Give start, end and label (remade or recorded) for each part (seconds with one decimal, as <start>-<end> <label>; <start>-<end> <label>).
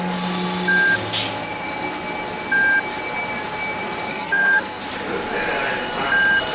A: 0.0-4.1 recorded; 4.1-4.8 remade; 4.8-6.5 recorded